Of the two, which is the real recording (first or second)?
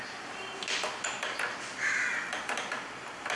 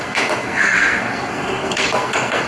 first